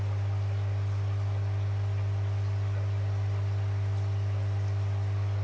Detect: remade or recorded recorded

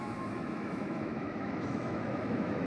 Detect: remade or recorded remade